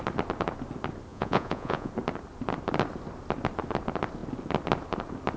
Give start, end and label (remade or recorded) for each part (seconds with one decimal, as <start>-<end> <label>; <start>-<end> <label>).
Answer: 0.0-1.1 recorded; 1.1-1.9 remade; 1.9-5.4 recorded